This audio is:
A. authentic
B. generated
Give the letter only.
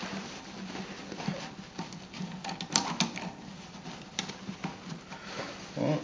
A